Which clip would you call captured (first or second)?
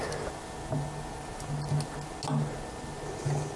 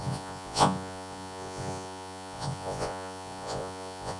first